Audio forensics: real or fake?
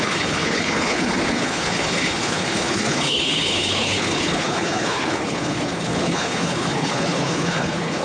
fake